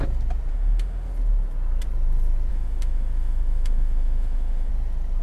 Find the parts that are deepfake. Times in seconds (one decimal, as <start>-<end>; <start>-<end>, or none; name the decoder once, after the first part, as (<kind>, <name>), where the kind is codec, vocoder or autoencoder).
0.5-1.1 (autoencoder, DAC-VAE); 2.5-4.7